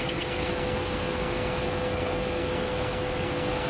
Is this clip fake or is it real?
fake